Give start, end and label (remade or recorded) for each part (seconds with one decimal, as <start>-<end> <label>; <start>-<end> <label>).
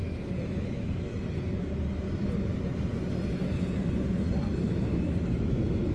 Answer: 0.0-1.1 remade; 1.1-4.6 recorded; 4.6-5.9 remade